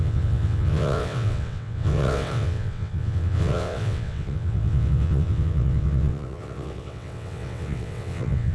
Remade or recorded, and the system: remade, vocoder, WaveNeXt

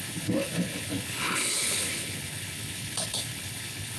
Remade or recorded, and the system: remade, codec, HILCodec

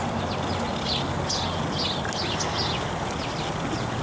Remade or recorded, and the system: recorded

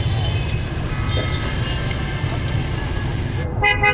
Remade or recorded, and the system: recorded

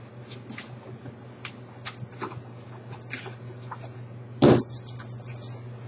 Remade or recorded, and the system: recorded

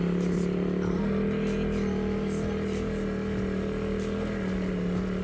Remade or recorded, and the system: recorded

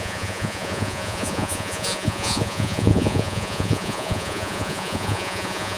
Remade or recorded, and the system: remade, vocoder, Vocos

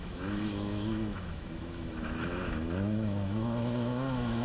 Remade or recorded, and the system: remade, autoencoder, DAC-VAE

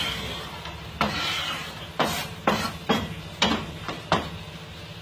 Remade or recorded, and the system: remade, vocoder, BigVGAN v2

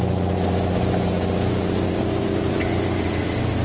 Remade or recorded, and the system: recorded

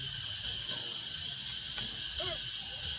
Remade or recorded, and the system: recorded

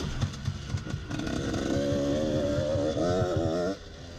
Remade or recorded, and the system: recorded